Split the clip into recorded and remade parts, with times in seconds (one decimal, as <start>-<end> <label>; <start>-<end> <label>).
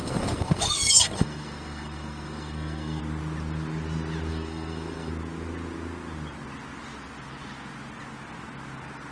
0.0-3.0 remade; 3.0-4.3 recorded; 4.3-5.1 remade; 5.1-9.1 recorded